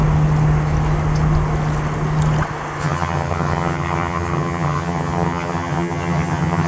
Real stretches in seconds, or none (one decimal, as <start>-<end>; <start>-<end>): 0.0-2.8